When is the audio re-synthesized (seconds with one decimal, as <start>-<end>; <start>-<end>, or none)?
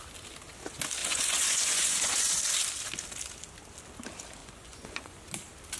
1.0-2.4; 4.4-5.2